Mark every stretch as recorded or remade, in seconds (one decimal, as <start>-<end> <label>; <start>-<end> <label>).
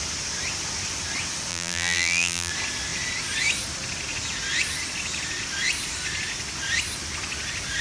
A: 0.0-1.5 recorded; 1.5-2.5 remade; 2.5-7.8 recorded